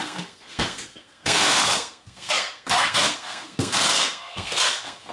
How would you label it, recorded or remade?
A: remade